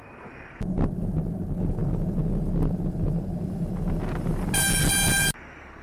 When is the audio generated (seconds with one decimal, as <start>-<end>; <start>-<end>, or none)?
0.0-0.5